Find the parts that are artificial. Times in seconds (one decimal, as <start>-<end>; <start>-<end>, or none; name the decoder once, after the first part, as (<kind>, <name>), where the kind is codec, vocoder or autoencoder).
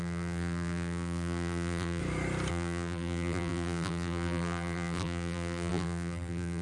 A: 0.0-2.0 (vocoder, BigVGAN v2); 2.5-6.6